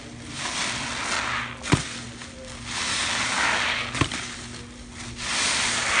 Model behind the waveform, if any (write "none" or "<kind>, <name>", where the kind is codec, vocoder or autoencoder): none